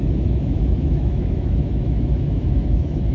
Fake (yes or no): yes